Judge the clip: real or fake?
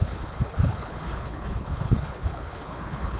fake